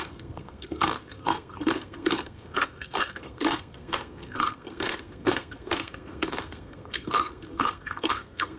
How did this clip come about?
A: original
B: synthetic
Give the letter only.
B